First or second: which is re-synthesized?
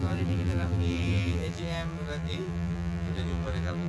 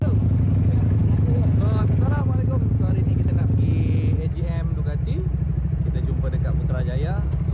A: first